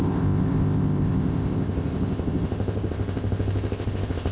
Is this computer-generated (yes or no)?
yes